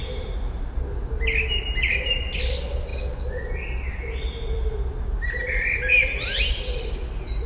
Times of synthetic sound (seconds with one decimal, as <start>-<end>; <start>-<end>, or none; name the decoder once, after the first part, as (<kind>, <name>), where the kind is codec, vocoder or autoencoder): none